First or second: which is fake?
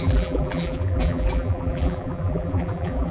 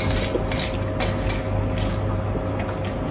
first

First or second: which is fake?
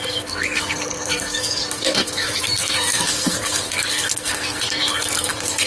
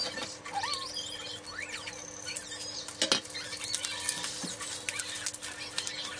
first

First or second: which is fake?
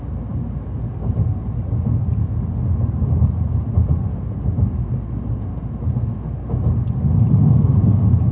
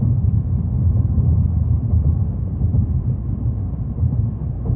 second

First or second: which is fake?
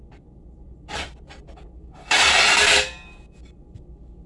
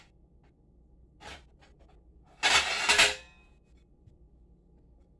first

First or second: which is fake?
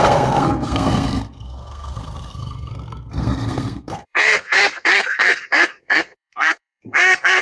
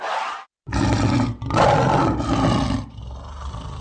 first